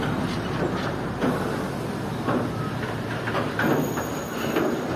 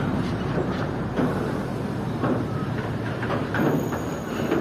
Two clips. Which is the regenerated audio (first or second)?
second